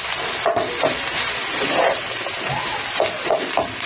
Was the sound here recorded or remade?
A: remade